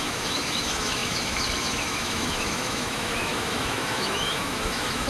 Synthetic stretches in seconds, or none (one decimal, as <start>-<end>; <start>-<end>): 0.0-5.1